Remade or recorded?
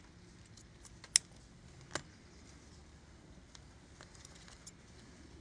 recorded